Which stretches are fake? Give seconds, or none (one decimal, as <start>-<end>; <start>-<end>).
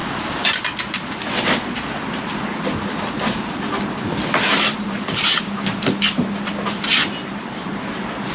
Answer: none